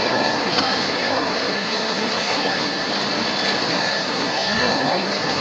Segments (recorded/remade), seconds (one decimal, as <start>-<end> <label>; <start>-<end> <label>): 0.0-2.9 remade; 2.9-3.7 recorded; 3.7-5.4 remade